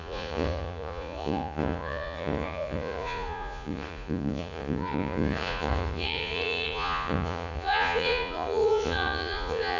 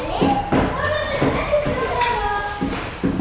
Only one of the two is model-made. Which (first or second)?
first